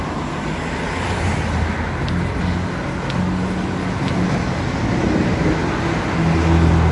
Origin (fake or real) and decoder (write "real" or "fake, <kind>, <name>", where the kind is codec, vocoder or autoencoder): real